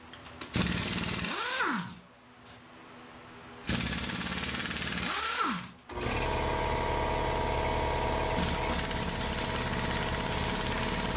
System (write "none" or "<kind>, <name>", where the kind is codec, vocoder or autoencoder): none